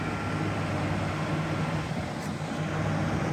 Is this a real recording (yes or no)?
yes